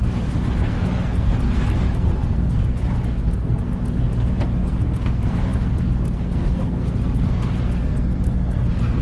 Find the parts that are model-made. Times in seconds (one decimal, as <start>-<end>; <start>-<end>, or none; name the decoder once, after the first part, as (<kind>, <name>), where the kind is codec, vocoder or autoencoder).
0.0-9.0 (codec, SNAC)